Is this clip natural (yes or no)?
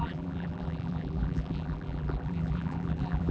no